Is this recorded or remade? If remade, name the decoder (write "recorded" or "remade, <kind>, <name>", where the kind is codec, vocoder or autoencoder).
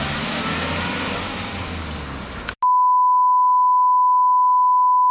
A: recorded